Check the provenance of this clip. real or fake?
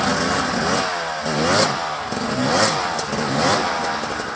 real